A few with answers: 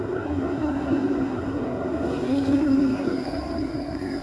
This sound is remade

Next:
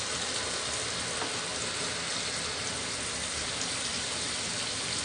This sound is recorded